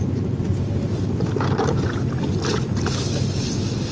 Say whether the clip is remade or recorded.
recorded